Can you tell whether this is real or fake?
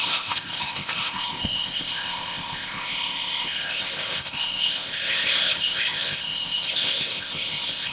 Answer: fake